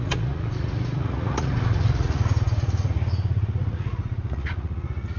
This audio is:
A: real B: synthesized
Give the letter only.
B